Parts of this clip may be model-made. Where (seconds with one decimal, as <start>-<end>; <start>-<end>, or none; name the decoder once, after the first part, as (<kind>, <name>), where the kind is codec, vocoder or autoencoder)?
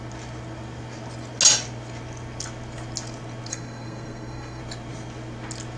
3.5-4.6 (codec, SNAC)